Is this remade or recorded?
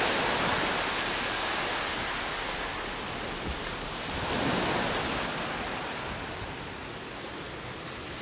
recorded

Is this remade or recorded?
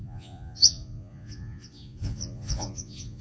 remade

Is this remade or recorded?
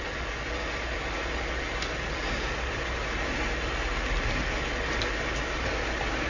recorded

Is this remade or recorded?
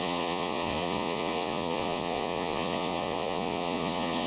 remade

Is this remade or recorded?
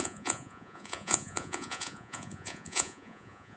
remade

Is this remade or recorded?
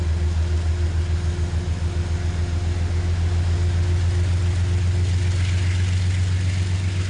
recorded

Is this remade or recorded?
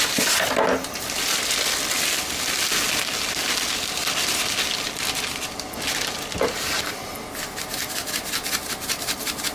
recorded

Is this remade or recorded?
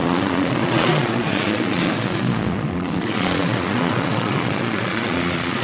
remade